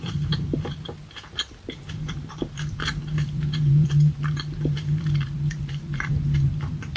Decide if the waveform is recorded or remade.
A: remade